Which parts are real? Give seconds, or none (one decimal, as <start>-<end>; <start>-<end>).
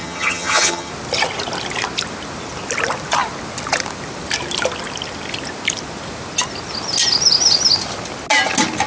0.9-8.9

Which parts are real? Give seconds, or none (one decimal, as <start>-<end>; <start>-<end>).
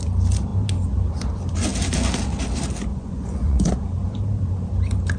0.0-2.9; 3.7-5.2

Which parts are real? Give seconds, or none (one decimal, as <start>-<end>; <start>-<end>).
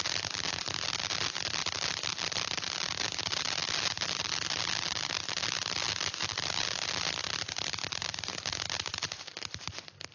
0.0-10.1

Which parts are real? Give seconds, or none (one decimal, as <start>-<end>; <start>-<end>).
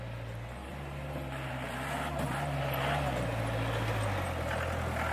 0.0-0.6; 1.5-5.1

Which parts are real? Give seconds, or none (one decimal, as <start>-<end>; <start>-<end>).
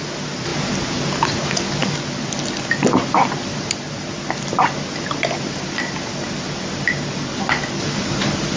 0.0-8.6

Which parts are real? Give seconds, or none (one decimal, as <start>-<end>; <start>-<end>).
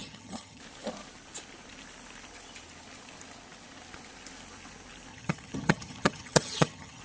0.6-5.1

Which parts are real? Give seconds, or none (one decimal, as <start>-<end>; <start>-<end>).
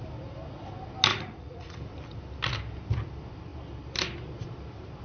0.0-1.1; 1.8-5.0